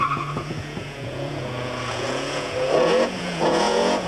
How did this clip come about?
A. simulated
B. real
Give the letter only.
A